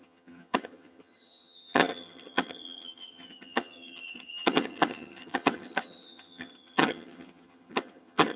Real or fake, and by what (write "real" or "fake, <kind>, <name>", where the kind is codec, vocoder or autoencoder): fake, vocoder, HiFi-GAN